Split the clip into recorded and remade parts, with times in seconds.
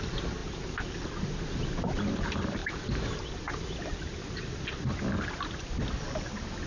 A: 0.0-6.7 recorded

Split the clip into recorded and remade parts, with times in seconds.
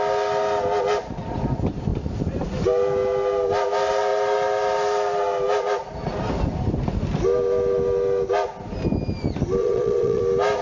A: 0.0-9.6 recorded; 9.6-10.2 remade; 10.2-10.6 recorded